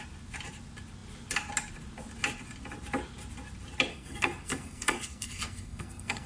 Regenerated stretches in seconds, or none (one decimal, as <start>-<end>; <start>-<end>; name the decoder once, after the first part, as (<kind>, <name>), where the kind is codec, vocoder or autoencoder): 3.9-6.3 (codec, SNAC)